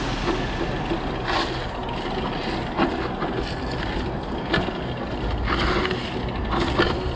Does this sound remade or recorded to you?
recorded